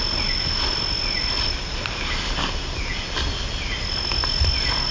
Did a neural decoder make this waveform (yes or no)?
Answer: no